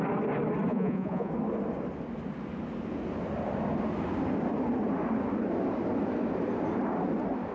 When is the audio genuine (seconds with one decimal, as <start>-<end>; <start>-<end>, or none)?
0.0-0.7; 1.3-7.5